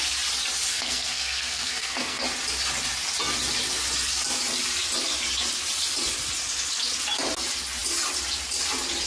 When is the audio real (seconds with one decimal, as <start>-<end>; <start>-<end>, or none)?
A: 0.0-0.7; 2.2-9.1